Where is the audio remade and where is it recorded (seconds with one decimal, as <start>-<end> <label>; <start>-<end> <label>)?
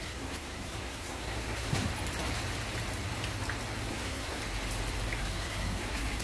0.0-1.9 remade; 1.9-3.9 recorded; 3.9-4.4 remade; 4.4-5.2 recorded; 5.2-6.2 remade